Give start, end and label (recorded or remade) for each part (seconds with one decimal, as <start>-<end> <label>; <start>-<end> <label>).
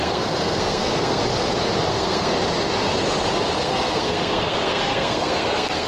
0.0-1.2 remade; 1.2-1.9 recorded; 1.9-2.3 remade; 2.3-3.6 recorded; 3.6-5.9 remade